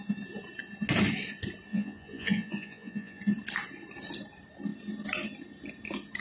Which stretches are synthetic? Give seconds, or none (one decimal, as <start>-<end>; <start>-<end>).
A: 1.7-3.2